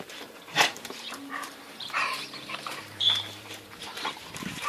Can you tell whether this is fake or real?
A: fake